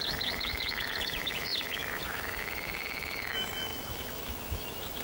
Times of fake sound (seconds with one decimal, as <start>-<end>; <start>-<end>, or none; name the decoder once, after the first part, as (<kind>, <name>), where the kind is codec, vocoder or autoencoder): 0.0-5.0 (autoencoder, DAC-VAE)